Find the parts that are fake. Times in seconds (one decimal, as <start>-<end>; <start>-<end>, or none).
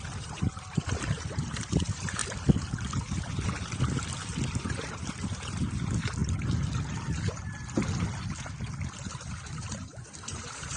0.0-2.2; 4.5-6.2; 9.1-10.8